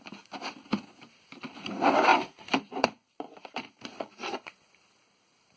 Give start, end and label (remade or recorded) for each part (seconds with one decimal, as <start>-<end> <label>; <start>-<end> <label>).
0.0-2.1 recorded; 2.1-5.6 remade